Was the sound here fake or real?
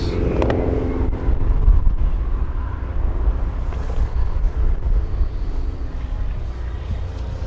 real